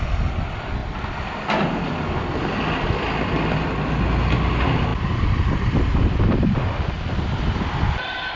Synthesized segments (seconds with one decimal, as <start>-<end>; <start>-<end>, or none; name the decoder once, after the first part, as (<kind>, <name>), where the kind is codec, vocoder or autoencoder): none